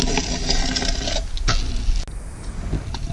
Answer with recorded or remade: recorded